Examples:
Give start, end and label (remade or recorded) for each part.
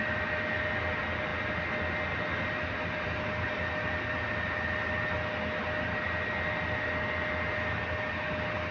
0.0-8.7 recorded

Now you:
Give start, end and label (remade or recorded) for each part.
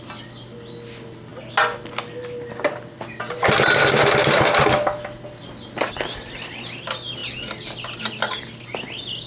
0.0-9.3 recorded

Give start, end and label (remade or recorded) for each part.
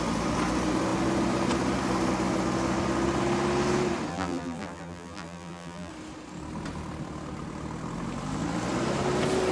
0.0-4.1 recorded; 4.1-5.9 remade; 5.9-9.5 recorded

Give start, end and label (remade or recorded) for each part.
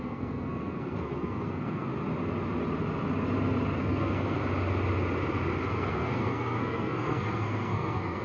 0.0-1.9 remade; 1.9-3.8 recorded; 3.8-4.4 remade; 4.4-5.7 recorded; 5.7-8.2 remade